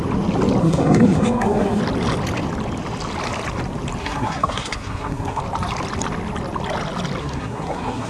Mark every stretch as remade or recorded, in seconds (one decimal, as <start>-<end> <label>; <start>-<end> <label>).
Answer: 0.0-0.6 recorded; 0.6-1.8 remade; 1.8-4.0 recorded; 4.0-5.4 remade; 5.4-7.2 recorded; 7.2-8.1 remade